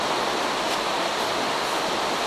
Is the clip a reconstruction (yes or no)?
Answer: no